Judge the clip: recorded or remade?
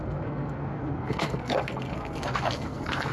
remade